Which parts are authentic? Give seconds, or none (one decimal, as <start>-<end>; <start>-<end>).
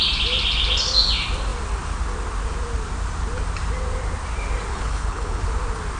0.0-4.7; 5.4-6.0